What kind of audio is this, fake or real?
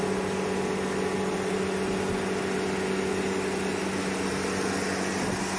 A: real